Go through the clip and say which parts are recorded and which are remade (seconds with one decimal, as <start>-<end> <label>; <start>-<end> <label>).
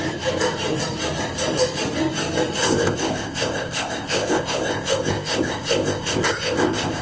0.0-2.6 recorded; 2.6-7.0 remade